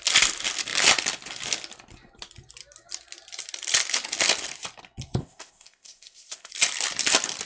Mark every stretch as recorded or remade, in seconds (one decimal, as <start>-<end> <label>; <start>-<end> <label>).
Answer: 0.0-5.2 recorded; 5.2-6.5 remade; 6.5-7.5 recorded